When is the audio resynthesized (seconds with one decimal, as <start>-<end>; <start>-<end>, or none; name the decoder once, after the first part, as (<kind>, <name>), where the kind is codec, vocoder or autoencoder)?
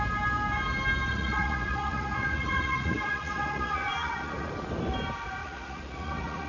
1.1-4.5 (vocoder, Vocos); 5.4-6.5